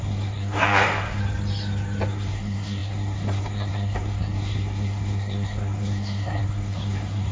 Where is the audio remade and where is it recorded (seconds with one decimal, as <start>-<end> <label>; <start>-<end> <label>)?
0.0-1.2 remade; 1.2-2.1 recorded; 2.1-7.3 remade